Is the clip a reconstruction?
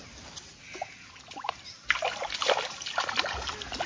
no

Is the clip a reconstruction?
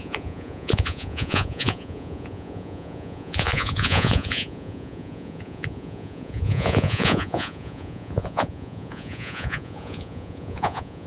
yes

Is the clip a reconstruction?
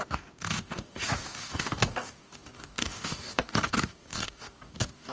yes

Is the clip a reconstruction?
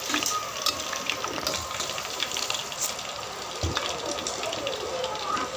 no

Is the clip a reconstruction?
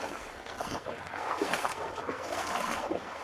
yes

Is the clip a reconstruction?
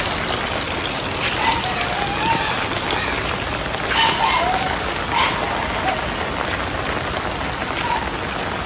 no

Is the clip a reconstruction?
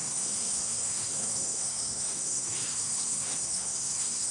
yes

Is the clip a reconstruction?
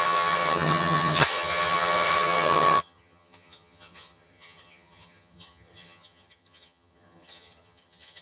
yes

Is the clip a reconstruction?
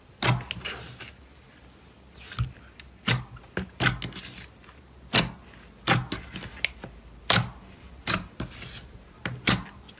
no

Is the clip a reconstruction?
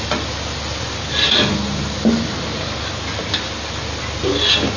no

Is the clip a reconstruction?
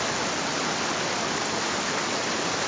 no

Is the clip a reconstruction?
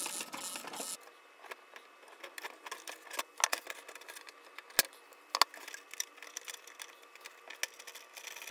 no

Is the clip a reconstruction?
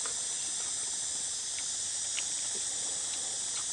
no